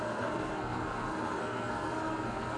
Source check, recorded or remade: remade